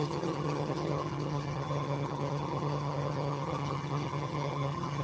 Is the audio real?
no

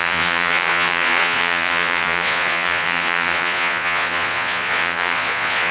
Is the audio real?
no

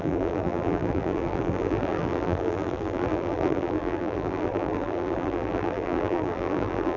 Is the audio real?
no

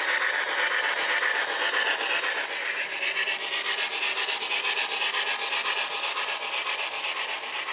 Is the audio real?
yes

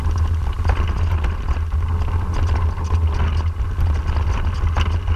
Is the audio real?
yes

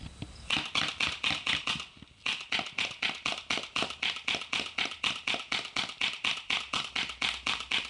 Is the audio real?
no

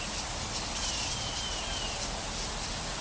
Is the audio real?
yes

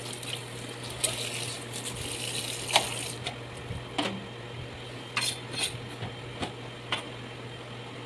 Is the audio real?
yes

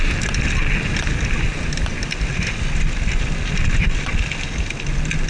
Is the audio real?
yes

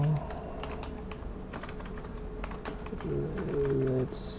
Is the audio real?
yes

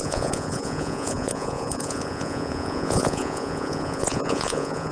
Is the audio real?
no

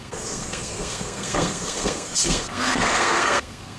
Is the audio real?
no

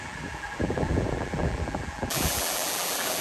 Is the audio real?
no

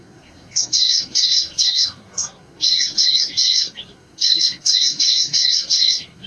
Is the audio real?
no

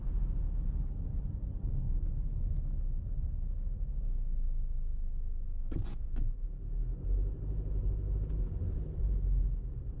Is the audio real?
yes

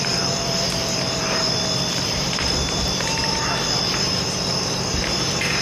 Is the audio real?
no